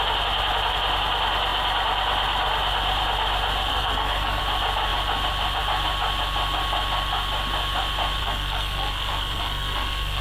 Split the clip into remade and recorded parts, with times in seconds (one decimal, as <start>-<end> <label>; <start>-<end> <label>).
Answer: 0.0-3.7 recorded; 3.7-4.4 remade; 4.4-8.2 recorded; 8.2-10.2 remade